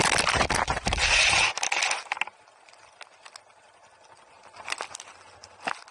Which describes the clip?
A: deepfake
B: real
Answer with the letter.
B